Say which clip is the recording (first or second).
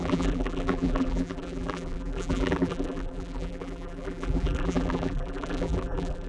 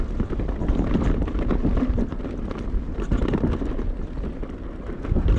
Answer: second